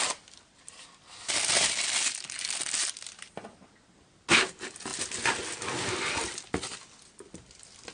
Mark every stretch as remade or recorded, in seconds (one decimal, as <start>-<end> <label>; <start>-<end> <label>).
0.0-7.9 recorded